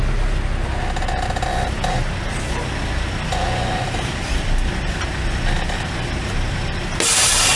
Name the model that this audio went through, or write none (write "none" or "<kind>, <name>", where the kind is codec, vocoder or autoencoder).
none